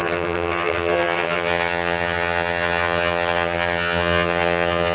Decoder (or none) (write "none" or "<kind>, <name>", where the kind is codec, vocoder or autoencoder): vocoder, HiFi-GAN